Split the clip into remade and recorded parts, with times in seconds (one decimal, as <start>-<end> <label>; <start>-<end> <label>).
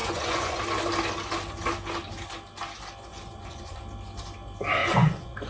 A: 0.0-0.6 remade; 0.6-3.1 recorded; 3.1-3.8 remade; 3.8-4.8 recorded; 4.8-5.5 remade